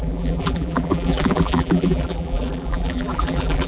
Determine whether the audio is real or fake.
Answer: fake